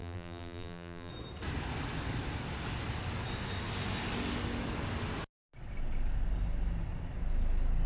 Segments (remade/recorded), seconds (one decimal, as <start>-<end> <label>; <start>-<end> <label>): 0.0-1.1 remade; 1.1-7.9 recorded